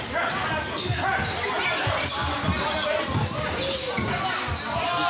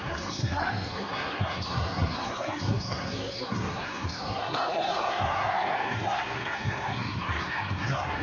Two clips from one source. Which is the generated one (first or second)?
second